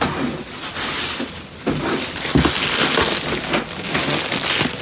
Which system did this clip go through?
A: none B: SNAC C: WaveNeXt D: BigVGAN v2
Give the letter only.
A